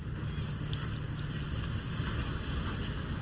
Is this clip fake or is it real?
real